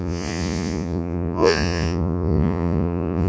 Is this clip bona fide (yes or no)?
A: no